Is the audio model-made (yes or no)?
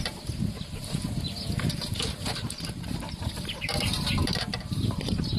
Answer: yes